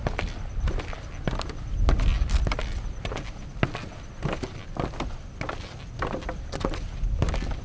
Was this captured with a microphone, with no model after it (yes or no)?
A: yes